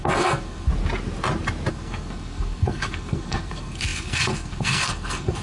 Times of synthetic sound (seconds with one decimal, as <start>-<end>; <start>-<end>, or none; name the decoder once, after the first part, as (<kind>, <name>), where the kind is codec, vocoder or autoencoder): 0.0-0.7 (codec, SNAC); 1.7-5.4